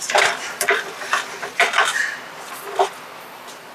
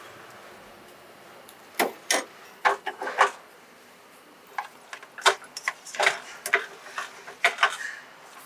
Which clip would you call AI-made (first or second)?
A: first